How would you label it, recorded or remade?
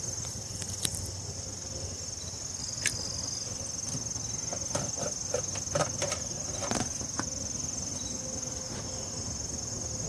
recorded